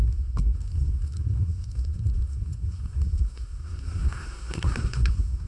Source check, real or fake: fake